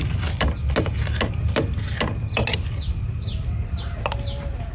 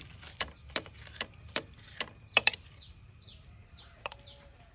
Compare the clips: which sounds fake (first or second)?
second